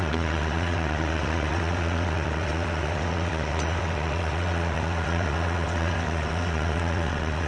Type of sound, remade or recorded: remade